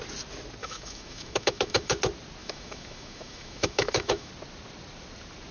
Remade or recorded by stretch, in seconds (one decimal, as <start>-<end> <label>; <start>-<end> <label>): 0.0-0.6 recorded; 0.6-2.0 remade; 2.0-2.4 recorded; 2.4-4.3 remade; 4.3-5.5 recorded